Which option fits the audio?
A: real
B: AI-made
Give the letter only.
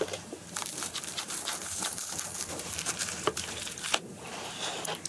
B